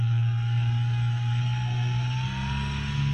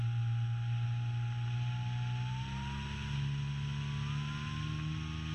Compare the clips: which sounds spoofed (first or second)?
first